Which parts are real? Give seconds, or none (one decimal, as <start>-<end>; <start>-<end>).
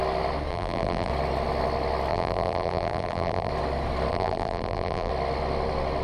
0.0-0.5; 1.1-2.1; 3.5-4.1; 5.1-6.0